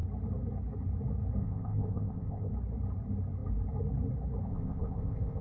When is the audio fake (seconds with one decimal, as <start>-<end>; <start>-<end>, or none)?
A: 1.4-2.5; 4.5-5.4

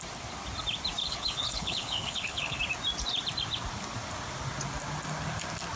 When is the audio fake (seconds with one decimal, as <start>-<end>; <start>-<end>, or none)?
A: 1.0-2.6

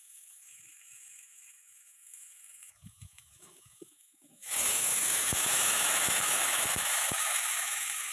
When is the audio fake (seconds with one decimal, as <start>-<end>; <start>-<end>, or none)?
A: 0.0-8.1